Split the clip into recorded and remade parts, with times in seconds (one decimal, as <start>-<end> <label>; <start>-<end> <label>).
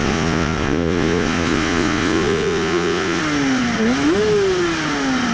0.0-3.2 remade; 3.2-5.3 recorded